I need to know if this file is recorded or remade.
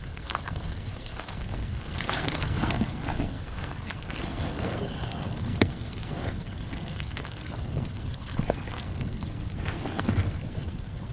remade